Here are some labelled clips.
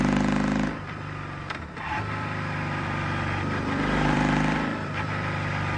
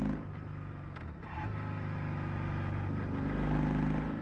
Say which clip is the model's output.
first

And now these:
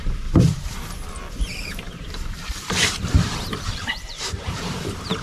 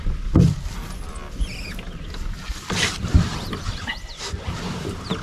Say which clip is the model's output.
first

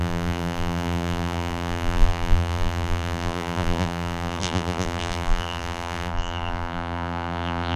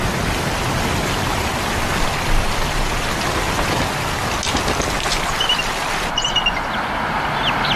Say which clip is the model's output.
first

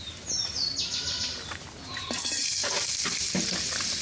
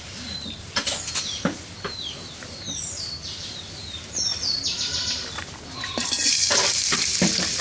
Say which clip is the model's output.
second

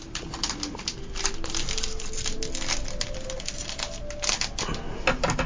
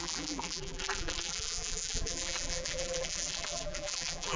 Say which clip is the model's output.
second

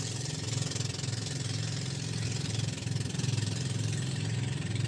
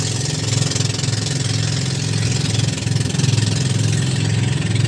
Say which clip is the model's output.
first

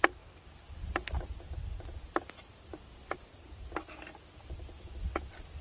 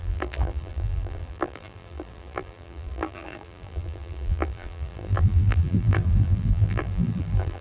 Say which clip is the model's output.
second